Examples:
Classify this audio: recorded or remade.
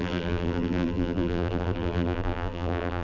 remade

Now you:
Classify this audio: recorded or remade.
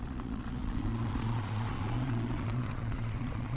remade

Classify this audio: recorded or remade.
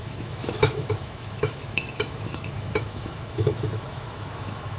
remade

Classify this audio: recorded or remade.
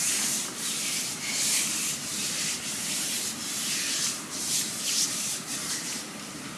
remade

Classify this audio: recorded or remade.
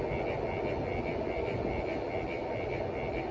recorded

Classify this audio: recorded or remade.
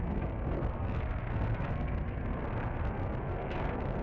remade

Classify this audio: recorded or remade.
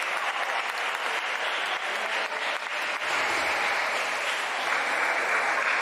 recorded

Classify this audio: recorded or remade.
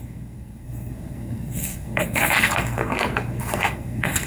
remade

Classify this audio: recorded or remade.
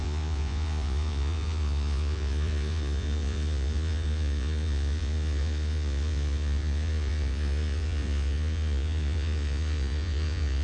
remade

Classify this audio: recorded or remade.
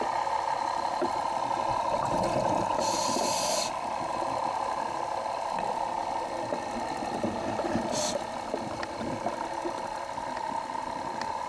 recorded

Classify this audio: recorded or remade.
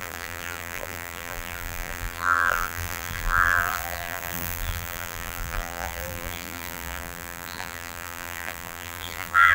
remade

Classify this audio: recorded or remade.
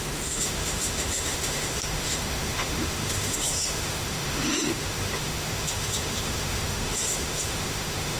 remade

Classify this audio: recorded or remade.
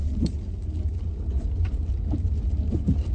recorded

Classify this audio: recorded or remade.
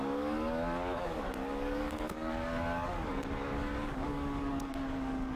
remade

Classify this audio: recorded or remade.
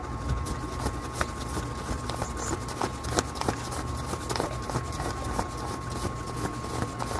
recorded